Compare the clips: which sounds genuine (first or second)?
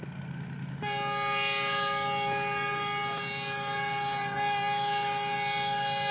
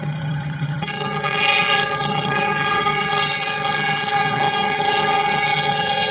first